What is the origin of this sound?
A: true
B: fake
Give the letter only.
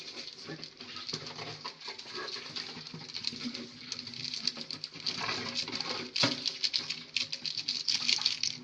A